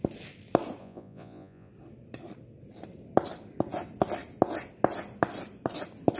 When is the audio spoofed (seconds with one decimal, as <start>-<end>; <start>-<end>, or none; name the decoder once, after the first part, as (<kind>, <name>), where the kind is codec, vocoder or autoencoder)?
0.8-1.7 (vocoder, Vocos)